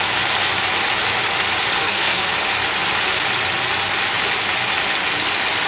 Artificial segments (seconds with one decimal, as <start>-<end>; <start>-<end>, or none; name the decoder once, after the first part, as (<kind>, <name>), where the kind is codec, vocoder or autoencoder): 1.8-2.3 (codec, SNAC)